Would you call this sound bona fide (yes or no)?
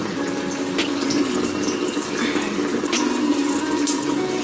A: yes